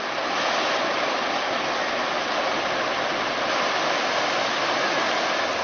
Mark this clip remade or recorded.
recorded